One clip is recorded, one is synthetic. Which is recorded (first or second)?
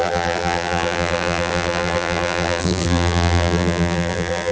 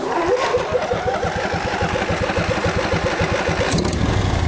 second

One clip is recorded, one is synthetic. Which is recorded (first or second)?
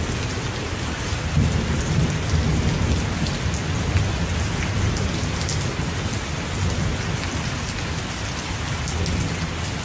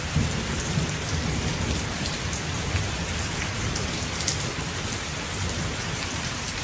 first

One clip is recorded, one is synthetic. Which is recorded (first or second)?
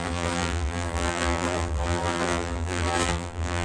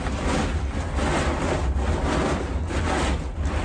second